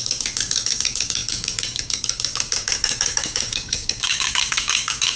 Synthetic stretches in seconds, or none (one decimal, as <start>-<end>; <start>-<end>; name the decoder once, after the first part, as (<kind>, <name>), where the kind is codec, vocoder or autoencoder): 0.0-5.2 (codec, DAC)